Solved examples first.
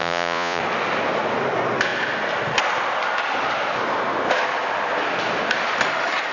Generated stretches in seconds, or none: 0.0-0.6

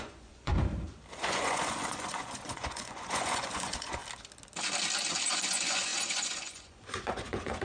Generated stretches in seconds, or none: 0.0-0.5; 1.1-4.0; 5.3-7.6

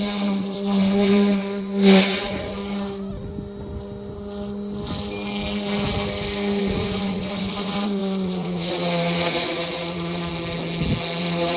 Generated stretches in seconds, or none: 0.0-2.6; 6.6-10.3; 11.2-11.6

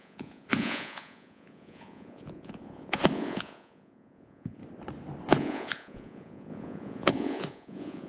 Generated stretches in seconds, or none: 0.0-4.6; 5.3-8.1

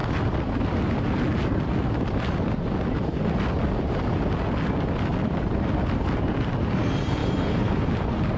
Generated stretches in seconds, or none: none

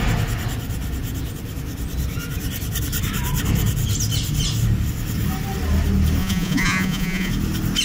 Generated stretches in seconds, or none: 6.2-7.3

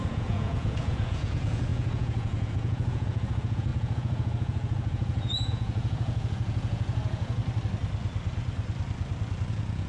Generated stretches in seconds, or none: 0.0-7.4; 9.5-9.9